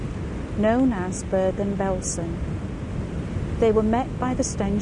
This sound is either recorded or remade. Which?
recorded